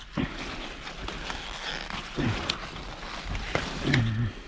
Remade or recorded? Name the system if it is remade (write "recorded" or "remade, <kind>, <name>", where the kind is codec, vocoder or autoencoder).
recorded